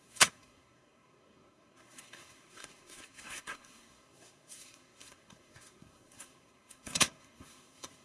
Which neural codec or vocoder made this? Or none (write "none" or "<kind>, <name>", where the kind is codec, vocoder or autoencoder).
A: codec, SNAC